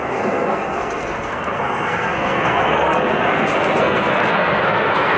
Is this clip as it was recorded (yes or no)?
no